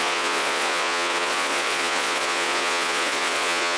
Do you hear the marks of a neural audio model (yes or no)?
yes